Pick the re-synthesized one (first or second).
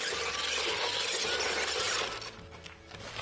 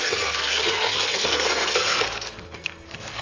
second